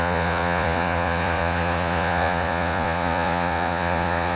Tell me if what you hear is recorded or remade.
remade